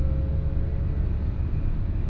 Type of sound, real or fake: real